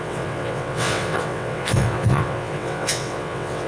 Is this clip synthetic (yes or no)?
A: yes